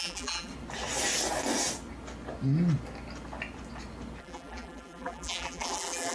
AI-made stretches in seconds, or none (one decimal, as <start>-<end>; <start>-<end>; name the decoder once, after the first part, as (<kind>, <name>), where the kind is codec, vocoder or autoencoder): 0.0-0.5 (vocoder, BigVGAN v2); 4.2-6.1